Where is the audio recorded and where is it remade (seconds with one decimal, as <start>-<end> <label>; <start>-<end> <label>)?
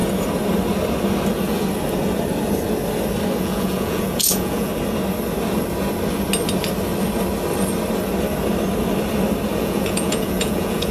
0.0-3.4 recorded; 3.4-4.7 remade; 4.7-9.6 recorded; 9.6-10.9 remade